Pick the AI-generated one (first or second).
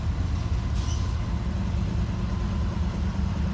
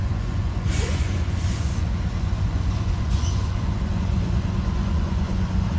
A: second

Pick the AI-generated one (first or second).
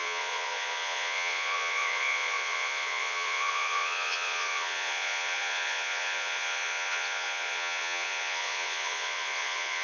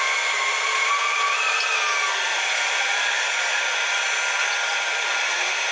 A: first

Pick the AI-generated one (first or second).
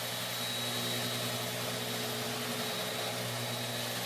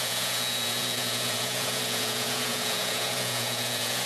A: second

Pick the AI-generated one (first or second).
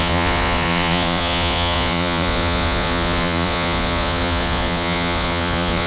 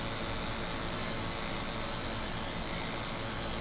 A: first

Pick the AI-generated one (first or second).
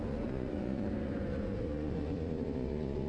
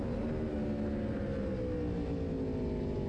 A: first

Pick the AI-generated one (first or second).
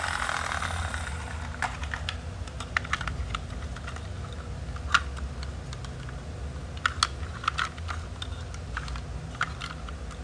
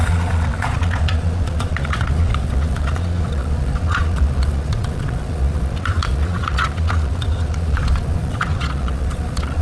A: second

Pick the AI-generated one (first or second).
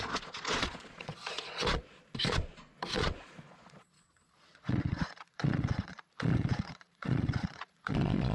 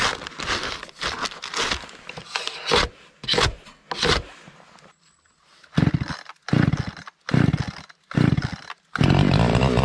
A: first